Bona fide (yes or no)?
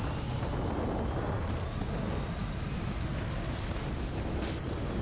yes